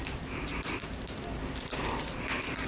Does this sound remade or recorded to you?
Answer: recorded